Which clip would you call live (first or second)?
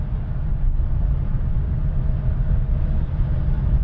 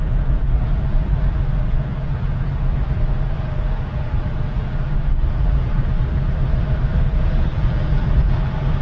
first